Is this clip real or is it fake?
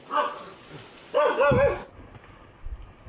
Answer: real